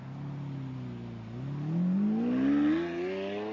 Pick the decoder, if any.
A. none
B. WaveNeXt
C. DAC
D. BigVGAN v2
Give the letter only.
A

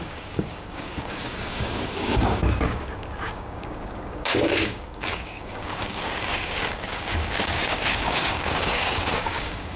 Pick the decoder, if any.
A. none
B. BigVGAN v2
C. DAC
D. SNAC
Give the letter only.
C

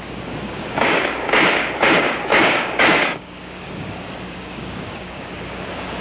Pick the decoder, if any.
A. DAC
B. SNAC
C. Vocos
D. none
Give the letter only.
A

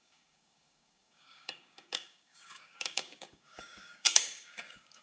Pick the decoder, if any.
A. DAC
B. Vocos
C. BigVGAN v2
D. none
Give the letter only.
A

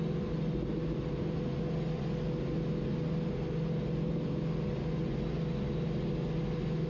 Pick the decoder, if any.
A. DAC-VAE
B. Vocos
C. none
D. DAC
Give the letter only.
C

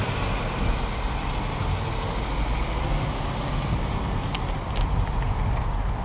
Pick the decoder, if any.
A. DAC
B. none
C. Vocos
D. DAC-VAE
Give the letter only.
B